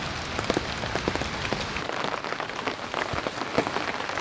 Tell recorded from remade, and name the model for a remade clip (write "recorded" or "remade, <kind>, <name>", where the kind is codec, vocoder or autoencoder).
recorded